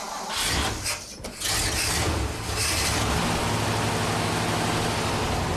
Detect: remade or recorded recorded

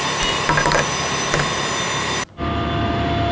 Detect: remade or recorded recorded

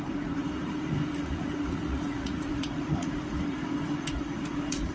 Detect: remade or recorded remade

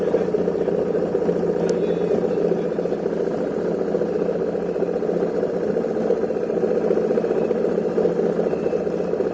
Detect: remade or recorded recorded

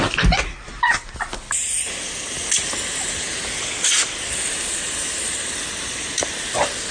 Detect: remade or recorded recorded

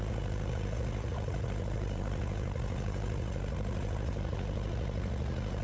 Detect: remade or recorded remade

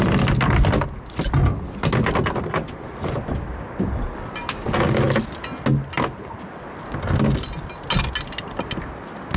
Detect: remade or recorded recorded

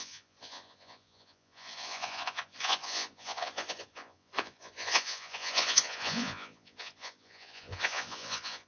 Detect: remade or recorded remade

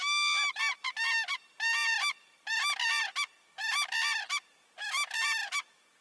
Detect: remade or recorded recorded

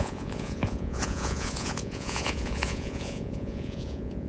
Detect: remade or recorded remade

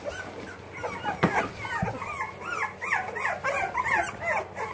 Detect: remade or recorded recorded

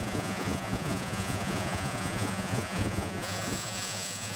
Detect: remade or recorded remade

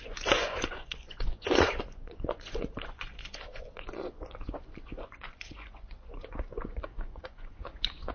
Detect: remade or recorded remade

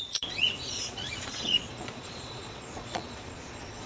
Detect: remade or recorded remade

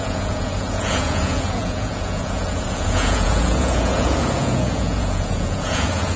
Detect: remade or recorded remade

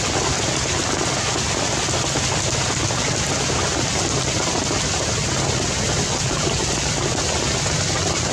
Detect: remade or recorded recorded